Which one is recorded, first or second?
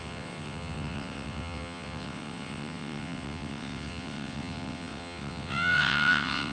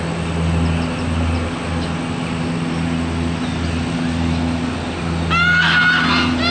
second